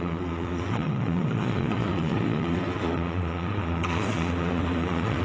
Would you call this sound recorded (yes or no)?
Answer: no